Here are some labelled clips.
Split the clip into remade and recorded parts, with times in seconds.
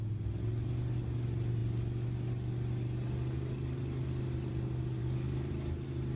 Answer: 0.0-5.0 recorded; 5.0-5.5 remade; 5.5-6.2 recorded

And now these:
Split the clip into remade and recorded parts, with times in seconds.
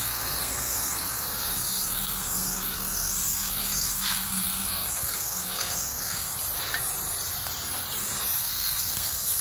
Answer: 0.0-6.3 remade; 6.3-8.4 recorded; 8.4-9.4 remade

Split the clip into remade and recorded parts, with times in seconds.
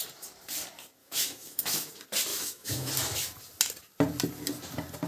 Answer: 0.0-1.0 recorded; 1.0-1.9 remade; 1.9-2.3 recorded; 2.3-2.9 remade; 2.9-5.1 recorded